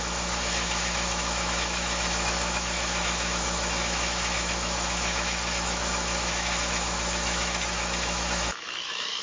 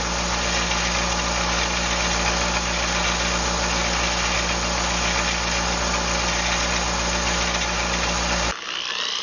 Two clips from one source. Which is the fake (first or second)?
first